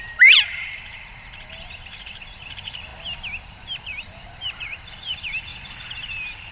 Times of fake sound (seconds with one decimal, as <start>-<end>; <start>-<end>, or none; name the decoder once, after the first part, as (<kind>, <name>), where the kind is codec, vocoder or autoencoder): 0.0-2.9 (vocoder, BigVGAN v2); 3.5-5.5